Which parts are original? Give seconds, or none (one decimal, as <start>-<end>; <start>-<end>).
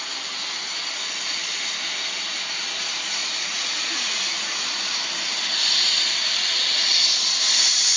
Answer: 0.0-3.2; 5.0-8.0